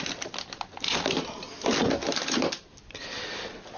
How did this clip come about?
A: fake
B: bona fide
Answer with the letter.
B